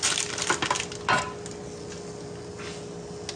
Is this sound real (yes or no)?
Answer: yes